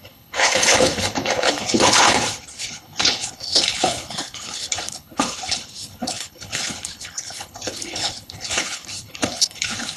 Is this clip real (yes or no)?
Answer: no